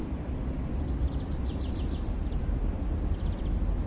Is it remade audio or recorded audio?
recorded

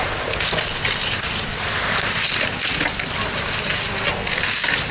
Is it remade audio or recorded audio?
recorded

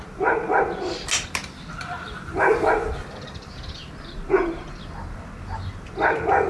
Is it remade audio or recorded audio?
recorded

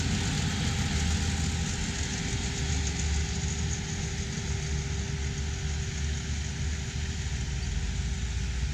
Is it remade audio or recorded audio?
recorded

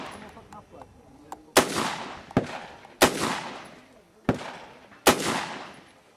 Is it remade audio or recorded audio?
recorded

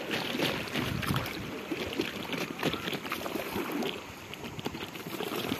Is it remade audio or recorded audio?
recorded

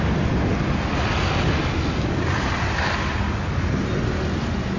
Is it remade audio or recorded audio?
recorded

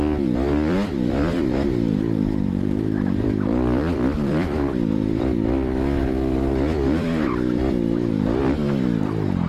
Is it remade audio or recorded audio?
remade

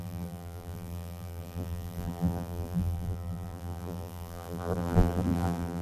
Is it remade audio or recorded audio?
remade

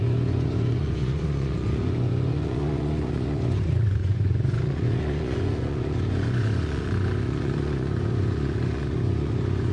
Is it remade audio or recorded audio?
remade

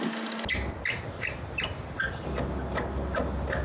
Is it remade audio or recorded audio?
recorded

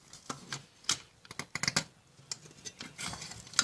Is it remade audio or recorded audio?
recorded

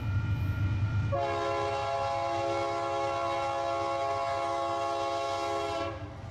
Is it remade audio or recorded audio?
recorded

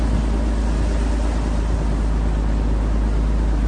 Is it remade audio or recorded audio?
recorded